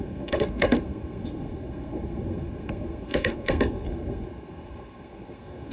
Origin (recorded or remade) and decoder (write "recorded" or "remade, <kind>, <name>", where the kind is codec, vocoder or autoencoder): remade, codec, SNAC